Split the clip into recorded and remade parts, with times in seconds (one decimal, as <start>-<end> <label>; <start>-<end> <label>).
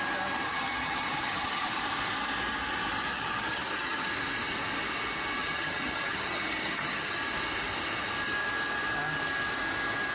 0.0-0.5 recorded; 0.5-1.8 remade; 1.8-3.1 recorded; 3.1-4.1 remade; 4.1-5.4 recorded; 5.4-7.2 remade; 7.2-10.1 recorded